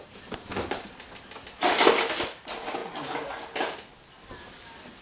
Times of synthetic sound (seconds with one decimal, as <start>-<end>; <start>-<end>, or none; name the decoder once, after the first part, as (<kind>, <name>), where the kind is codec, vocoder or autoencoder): none